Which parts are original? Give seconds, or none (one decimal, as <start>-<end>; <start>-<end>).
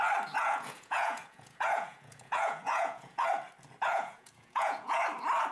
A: 0.0-0.4; 3.3-3.9; 5.0-5.5